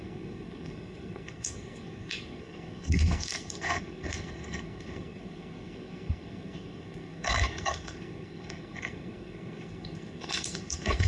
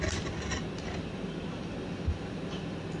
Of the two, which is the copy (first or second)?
first